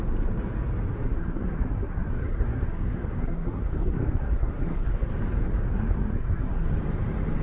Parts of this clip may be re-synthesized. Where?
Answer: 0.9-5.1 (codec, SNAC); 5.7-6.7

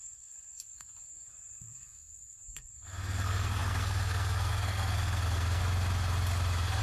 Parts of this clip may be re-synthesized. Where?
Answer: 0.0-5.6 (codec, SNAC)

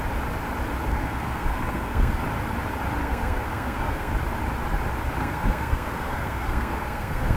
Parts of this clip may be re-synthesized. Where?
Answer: 0.9-2.2 (codec, SNAC); 3.0-4.1; 5.2-7.4

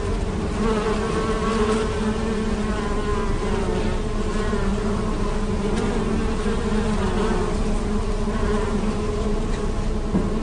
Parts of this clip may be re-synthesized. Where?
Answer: none

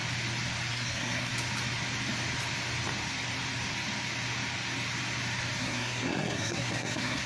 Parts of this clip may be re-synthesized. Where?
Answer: 0.7-1.3 (codec, SNAC); 5.6-7.3

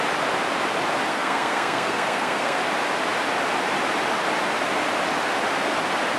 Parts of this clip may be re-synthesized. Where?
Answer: 1.1-2.6 (codec, SNAC)